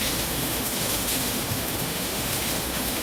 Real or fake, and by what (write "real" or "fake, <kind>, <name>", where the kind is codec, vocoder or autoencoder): fake, autoencoder, DAC-VAE